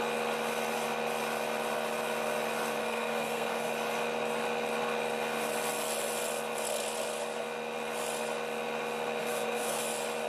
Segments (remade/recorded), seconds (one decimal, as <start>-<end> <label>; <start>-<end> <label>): 0.0-2.8 recorded; 2.8-3.7 remade; 3.7-9.2 recorded; 9.2-9.8 remade; 9.8-10.3 recorded